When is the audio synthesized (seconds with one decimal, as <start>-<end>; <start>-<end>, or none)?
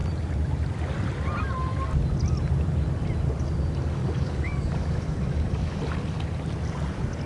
4.0-5.8